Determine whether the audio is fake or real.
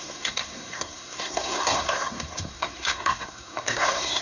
fake